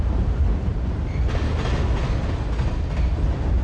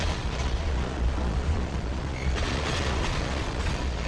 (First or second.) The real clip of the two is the first